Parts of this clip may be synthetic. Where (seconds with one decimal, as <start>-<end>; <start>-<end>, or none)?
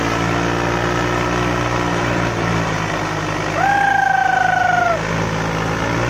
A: 1.9-2.8